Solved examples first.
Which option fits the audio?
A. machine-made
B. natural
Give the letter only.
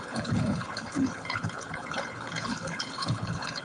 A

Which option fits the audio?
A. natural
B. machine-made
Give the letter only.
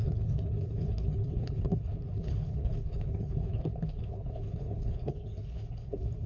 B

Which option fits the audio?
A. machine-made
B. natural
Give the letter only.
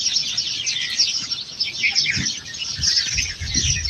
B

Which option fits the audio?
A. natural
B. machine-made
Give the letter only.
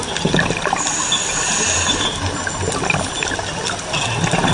A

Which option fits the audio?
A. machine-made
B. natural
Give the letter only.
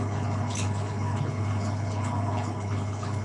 A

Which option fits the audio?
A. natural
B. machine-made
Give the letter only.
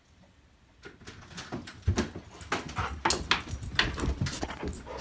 A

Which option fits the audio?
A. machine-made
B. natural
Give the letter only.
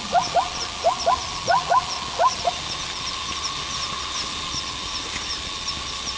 B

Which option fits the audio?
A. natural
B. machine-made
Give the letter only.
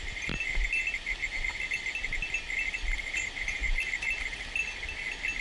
A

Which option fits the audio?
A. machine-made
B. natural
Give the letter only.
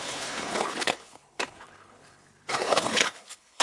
A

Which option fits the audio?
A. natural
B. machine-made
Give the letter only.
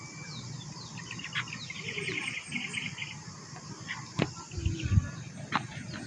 A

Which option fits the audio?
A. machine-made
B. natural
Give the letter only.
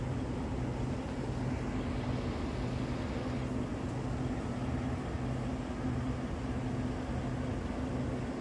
B